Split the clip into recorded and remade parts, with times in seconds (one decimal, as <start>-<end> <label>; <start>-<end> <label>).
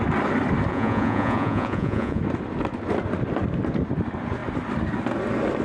0.0-0.7 recorded; 0.7-2.2 remade; 2.2-5.6 recorded